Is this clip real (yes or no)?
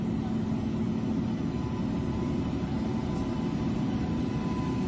yes